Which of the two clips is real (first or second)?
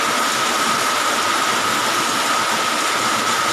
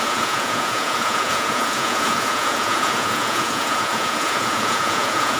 first